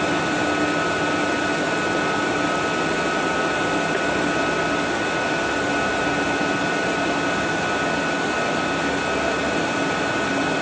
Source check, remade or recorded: recorded